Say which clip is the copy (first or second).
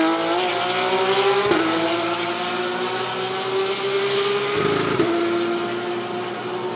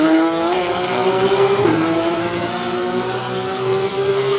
second